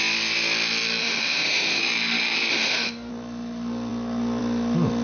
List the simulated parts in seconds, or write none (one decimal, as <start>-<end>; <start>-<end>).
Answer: 1.0-1.8; 2.5-3.1